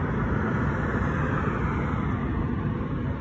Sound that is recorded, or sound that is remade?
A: recorded